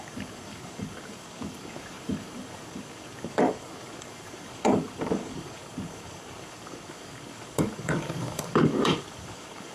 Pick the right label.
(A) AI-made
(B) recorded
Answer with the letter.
A